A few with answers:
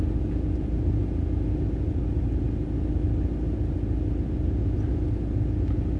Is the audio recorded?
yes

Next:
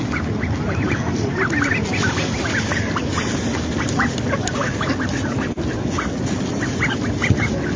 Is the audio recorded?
yes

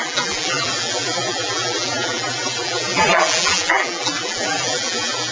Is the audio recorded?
no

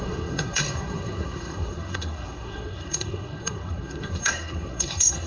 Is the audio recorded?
no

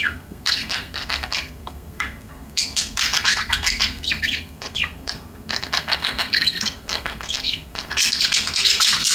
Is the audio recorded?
no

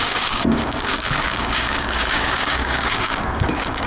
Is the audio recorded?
no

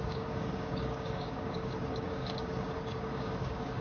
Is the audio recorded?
no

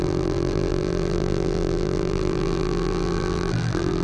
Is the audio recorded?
no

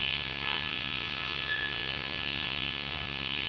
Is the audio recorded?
no